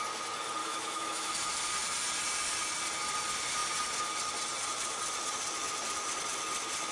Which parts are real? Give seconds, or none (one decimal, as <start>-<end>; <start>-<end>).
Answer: 0.0-0.6; 1.3-6.9